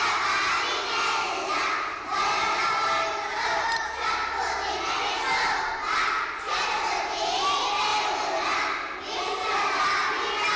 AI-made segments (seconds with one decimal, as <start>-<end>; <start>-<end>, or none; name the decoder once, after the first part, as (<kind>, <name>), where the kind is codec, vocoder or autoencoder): none